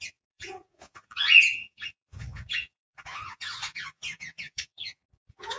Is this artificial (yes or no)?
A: yes